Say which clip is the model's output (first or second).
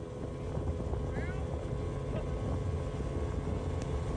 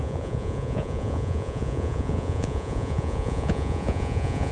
second